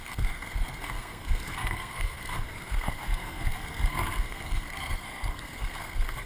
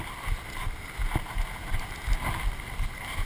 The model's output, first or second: first